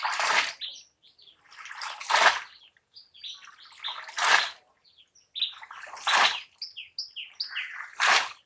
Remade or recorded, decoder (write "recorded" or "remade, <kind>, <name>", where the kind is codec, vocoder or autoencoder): recorded